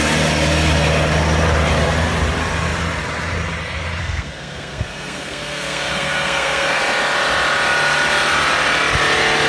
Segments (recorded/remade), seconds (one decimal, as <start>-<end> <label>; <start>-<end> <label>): 0.0-4.0 recorded; 4.0-6.8 remade; 6.8-9.5 recorded